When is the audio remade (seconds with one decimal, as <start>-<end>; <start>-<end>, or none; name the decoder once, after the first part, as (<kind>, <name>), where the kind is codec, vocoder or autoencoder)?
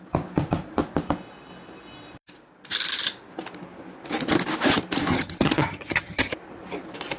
5.1-6.3 (vocoder, HiFi-GAN)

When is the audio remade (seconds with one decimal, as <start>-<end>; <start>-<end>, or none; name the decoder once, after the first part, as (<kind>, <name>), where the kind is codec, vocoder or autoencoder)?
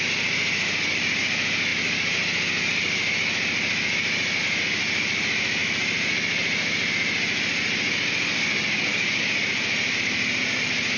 none